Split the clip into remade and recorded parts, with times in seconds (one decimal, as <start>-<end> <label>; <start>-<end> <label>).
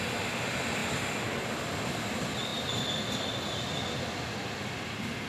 0.0-5.3 recorded